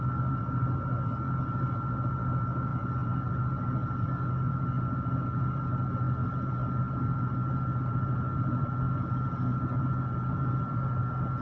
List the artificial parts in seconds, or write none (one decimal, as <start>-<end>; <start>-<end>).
none